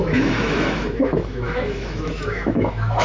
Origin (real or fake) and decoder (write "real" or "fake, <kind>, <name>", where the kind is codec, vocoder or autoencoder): fake, autoencoder, DAC-VAE